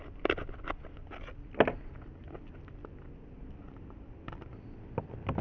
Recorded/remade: recorded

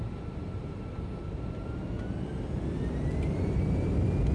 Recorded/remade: recorded